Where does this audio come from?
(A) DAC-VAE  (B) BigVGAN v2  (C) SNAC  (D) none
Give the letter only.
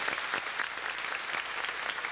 D